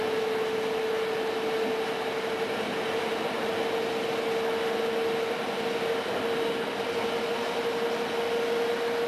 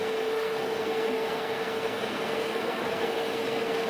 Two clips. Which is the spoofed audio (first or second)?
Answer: second